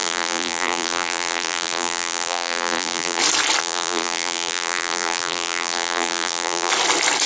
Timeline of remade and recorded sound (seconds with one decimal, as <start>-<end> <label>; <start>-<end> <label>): 0.0-3.2 remade; 3.2-3.6 recorded; 3.6-6.7 remade; 6.7-7.3 recorded